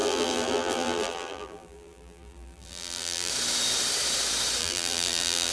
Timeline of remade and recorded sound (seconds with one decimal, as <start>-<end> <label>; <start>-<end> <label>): 0.0-3.3 remade; 3.3-4.6 recorded; 4.6-5.5 remade